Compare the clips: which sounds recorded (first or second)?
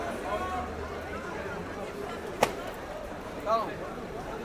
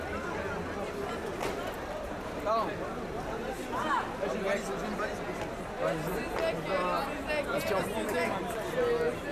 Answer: second